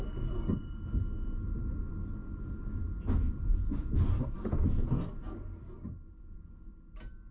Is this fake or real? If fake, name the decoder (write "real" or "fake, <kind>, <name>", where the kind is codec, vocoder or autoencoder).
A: real